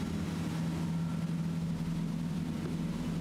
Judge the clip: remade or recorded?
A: recorded